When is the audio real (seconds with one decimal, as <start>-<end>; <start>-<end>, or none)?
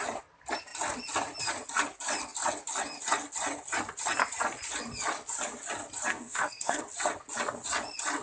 0.0-6.1; 6.8-8.2